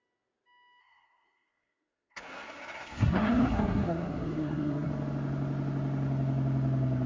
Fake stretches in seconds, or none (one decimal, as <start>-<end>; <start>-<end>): 0.8-4.9